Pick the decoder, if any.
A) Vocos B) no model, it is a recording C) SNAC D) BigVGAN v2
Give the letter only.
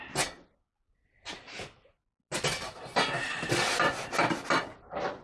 B